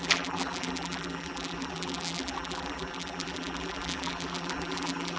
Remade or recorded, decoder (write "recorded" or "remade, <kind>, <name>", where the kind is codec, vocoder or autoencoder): remade, vocoder, BigVGAN v2